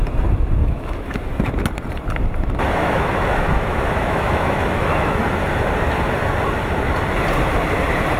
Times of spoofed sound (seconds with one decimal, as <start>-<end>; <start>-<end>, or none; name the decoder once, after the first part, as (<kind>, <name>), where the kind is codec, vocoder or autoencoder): 0.6-1.5 (autoencoder, DAC-VAE); 2.8-5.2